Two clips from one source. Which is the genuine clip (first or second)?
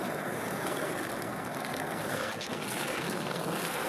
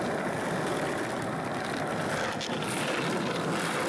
second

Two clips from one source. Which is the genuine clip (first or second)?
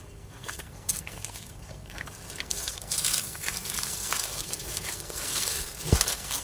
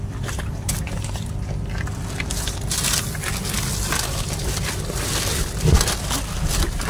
second